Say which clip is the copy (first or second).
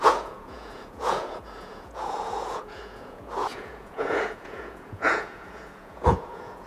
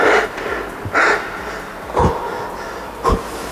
first